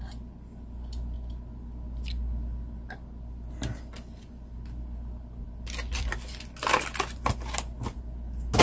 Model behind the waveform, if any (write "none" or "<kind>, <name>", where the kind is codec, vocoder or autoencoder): none